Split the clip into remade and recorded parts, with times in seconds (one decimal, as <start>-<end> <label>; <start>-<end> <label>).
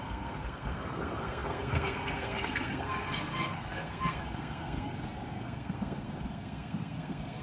0.0-7.4 remade